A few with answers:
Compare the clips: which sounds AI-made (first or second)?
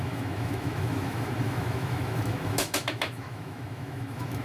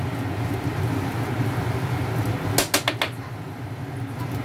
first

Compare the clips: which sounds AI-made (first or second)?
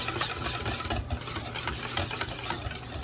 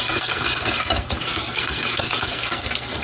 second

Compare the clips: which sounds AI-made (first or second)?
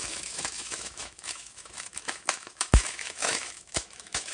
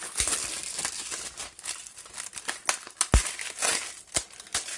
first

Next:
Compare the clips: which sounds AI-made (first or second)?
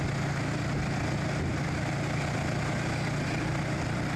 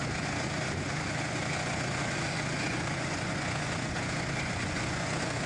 second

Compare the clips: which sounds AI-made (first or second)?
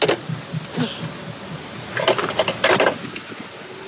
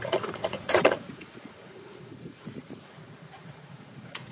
second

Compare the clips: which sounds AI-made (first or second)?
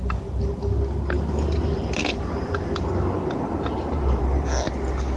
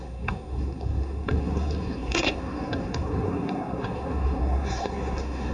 second